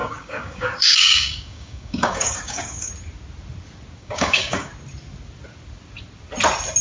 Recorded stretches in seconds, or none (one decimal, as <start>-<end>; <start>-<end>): 2.9-4.0; 4.7-6.8